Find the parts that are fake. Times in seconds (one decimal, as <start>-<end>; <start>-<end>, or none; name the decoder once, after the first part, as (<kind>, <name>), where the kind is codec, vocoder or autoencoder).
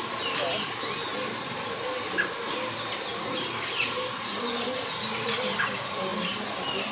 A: none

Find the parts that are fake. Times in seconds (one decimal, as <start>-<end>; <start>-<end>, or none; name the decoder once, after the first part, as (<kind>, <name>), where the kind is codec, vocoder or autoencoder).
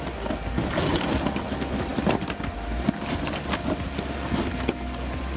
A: none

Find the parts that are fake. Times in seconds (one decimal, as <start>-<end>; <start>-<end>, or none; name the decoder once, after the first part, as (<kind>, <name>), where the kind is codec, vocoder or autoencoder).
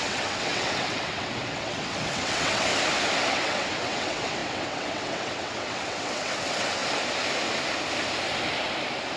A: 0.0-2.7 (vocoder, WaveNeXt); 3.3-6.8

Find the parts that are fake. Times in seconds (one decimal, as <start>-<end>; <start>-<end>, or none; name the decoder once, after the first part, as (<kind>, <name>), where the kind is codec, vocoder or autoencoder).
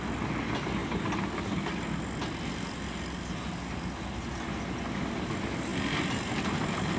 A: none